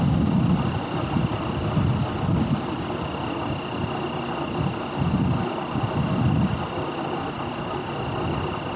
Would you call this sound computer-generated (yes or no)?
no